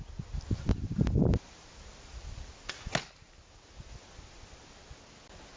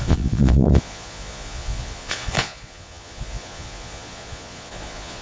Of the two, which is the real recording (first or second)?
first